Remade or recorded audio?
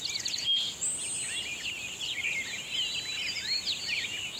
recorded